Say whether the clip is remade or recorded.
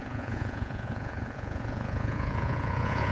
remade